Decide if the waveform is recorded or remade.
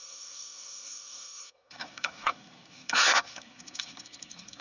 remade